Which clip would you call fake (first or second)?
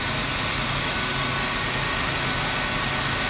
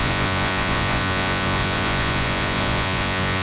second